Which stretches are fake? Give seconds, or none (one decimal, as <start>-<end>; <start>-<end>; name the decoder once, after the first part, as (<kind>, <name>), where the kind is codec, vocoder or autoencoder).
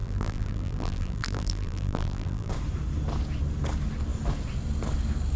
0.0-2.5 (vocoder, BigVGAN v2)